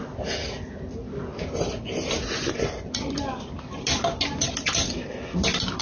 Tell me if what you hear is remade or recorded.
recorded